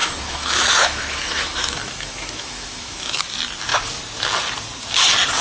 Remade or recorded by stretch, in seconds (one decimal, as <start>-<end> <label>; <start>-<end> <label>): 0.0-3.2 remade; 3.2-5.4 recorded